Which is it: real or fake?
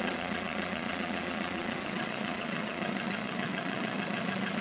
fake